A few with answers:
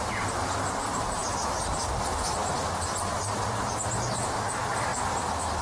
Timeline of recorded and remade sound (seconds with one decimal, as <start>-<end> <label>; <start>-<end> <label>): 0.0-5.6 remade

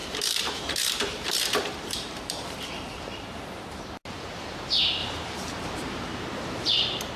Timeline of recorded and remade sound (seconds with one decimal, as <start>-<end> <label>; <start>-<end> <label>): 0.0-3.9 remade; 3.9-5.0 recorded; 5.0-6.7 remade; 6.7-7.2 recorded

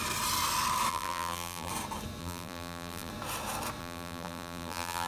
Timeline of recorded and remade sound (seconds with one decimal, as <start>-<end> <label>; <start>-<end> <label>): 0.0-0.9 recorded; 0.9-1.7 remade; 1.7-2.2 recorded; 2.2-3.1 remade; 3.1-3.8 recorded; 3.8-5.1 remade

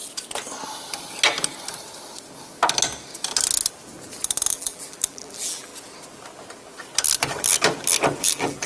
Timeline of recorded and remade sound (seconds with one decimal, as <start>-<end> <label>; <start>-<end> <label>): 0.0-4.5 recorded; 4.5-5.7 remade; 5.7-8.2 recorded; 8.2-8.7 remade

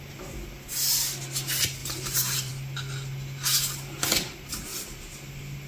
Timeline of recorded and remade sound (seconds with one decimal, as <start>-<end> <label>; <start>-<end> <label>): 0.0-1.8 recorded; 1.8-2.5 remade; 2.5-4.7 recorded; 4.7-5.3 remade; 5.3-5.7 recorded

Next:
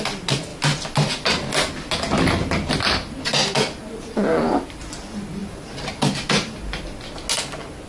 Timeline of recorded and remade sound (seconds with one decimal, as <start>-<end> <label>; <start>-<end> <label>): 0.0-3.8 recorded; 3.8-5.0 remade; 5.0-5.4 recorded; 5.4-6.8 remade; 6.8-7.9 recorded